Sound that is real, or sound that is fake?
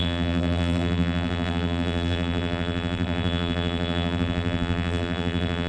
fake